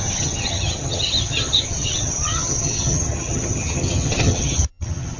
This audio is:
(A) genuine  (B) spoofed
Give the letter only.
B